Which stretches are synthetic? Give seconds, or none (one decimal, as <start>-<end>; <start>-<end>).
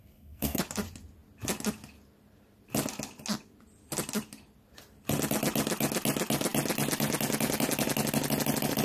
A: 0.0-0.6